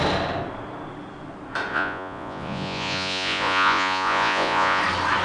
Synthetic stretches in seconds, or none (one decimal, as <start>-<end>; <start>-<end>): 1.7-4.8